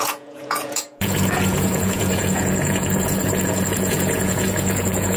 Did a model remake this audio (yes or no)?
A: yes